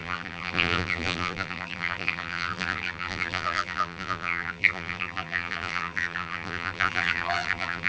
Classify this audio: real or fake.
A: fake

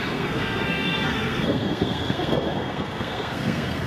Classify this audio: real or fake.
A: fake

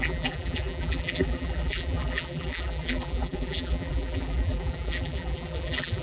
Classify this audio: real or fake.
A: fake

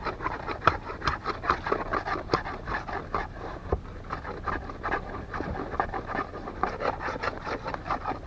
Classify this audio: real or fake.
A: fake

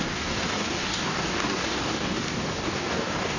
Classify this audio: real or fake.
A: fake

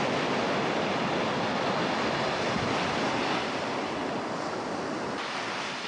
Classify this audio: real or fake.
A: real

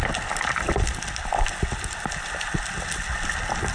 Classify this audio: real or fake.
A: real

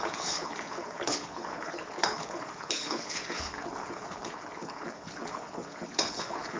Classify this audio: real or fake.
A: fake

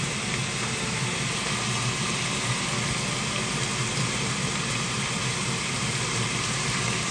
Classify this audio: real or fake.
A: real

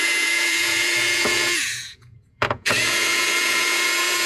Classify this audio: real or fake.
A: fake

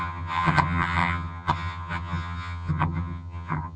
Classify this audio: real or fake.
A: fake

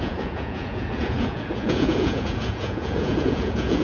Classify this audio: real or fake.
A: fake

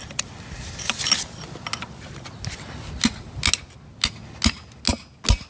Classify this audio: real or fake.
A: real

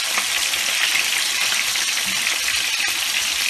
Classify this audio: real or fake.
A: real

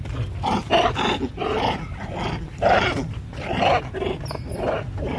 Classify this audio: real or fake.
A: real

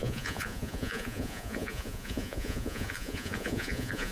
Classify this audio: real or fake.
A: fake